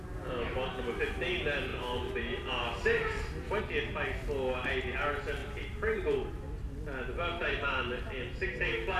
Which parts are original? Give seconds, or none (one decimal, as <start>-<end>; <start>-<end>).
0.0-1.7; 3.6-5.4; 6.3-7.4; 8.0-9.0